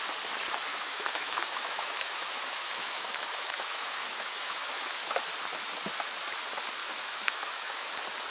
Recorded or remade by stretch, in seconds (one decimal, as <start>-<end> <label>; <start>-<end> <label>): 0.0-0.7 recorded; 0.7-5.1 remade; 5.1-6.8 recorded; 6.8-7.9 remade; 7.9-8.3 recorded